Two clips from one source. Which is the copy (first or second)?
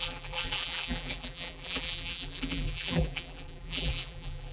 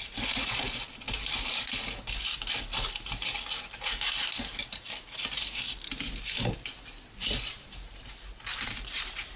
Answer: first